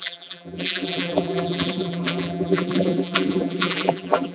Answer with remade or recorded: remade